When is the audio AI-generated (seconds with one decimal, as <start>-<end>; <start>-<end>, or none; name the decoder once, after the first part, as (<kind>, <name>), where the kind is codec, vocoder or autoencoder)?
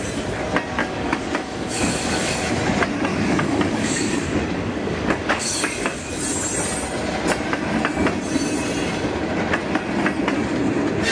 0.8-2.5 (codec, DAC); 3.1-6.2